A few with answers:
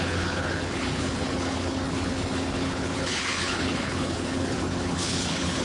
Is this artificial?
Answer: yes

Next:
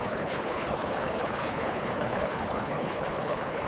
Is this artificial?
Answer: yes